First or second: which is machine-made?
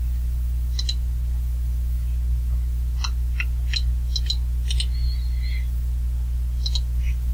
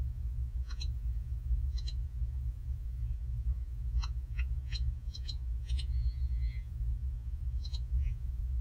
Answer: second